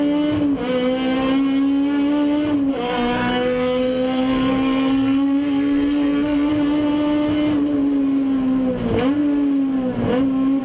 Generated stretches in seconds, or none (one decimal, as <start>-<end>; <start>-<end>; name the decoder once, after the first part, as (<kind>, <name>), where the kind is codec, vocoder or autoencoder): 2.7-6.5 (codec, SNAC)